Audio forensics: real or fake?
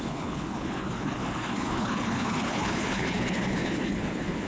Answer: fake